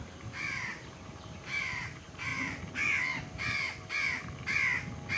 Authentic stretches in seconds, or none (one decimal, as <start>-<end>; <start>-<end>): 2.3-5.2

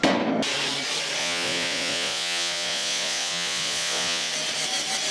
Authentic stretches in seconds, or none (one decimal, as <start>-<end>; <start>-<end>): 0.0-1.2; 4.3-5.1